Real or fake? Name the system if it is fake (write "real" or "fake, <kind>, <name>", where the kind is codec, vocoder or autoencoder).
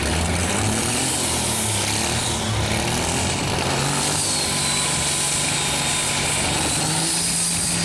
real